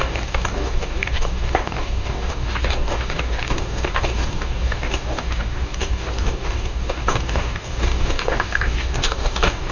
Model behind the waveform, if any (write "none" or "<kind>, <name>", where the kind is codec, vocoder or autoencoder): codec, DAC